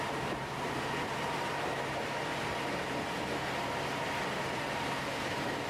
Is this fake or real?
real